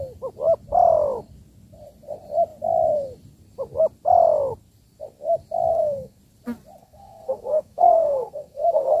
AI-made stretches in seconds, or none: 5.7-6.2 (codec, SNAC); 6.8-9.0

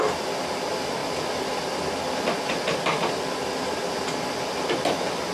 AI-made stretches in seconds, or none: none

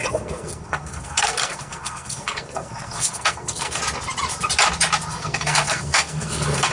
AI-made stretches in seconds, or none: 0.0-3.8 (codec, SNAC); 5.1-6.7

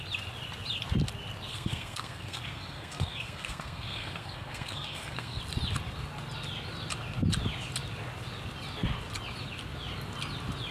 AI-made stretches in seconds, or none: 1.5-5.4 (codec, SNAC)

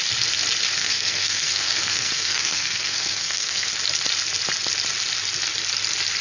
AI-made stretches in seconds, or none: 0.8-3.7 (codec, SNAC)

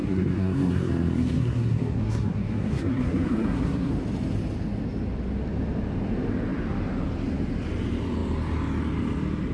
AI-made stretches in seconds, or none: 0.0-3.9 (codec, SNAC)